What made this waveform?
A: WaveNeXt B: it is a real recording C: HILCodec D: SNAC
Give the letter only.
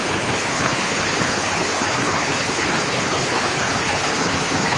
C